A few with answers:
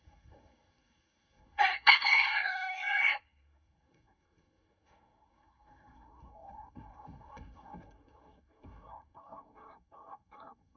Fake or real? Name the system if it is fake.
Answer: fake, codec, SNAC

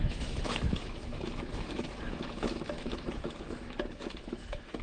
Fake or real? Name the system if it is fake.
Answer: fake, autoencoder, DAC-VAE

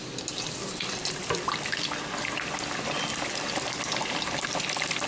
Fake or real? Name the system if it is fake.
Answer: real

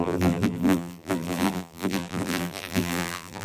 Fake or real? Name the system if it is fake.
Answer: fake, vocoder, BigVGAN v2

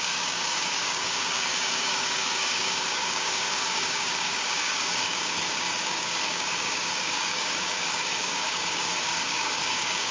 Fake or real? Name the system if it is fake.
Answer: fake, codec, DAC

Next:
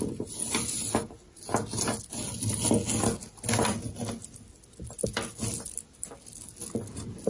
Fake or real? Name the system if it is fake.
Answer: real